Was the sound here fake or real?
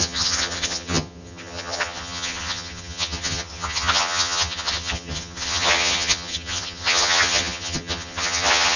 fake